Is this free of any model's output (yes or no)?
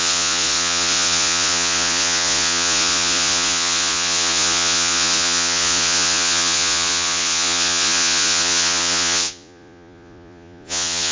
no